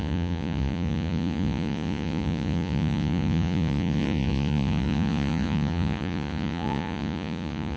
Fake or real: fake